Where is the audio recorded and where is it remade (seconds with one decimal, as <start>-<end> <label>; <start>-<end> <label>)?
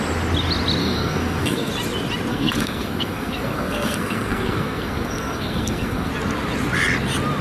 0.0-0.8 recorded; 0.8-1.7 remade; 1.7-2.3 recorded; 2.3-6.1 remade; 6.1-7.4 recorded